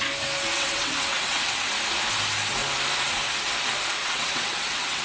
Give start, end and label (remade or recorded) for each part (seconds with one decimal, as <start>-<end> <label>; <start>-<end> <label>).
0.0-0.5 recorded; 0.5-1.7 remade; 1.7-4.0 recorded; 4.0-5.0 remade